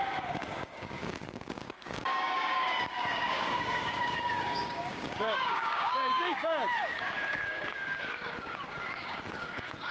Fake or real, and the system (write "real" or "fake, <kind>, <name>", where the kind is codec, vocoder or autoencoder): fake, codec, DAC